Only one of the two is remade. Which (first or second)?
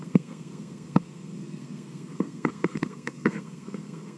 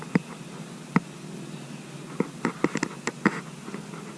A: first